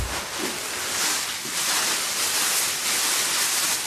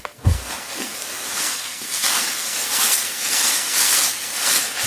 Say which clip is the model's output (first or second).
second